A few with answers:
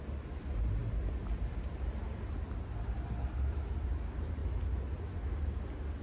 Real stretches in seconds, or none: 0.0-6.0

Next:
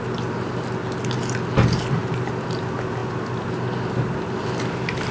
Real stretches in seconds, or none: 0.0-5.1